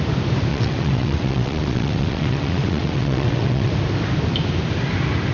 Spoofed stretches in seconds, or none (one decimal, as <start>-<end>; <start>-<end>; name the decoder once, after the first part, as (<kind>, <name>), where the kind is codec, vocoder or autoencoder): 0.5-3.7 (vocoder, WaveNeXt)